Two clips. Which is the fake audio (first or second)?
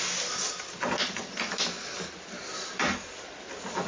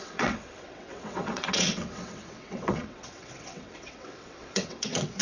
second